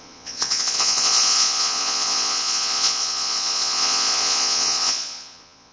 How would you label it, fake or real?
fake